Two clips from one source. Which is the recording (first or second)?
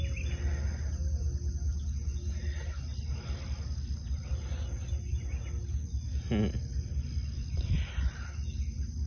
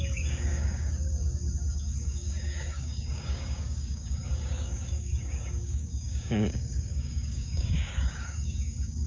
first